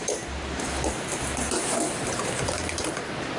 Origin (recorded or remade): recorded